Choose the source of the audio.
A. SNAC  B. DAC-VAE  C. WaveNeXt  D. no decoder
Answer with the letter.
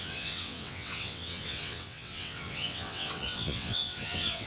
C